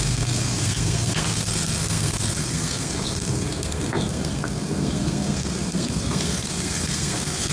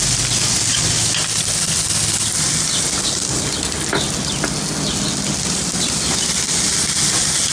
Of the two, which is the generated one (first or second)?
first